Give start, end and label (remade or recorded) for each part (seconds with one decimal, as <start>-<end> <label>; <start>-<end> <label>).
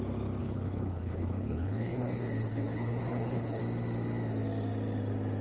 0.0-0.4 recorded; 0.4-3.6 remade; 3.6-5.4 recorded